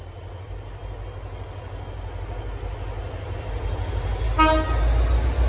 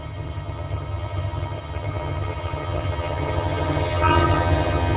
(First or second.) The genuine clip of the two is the first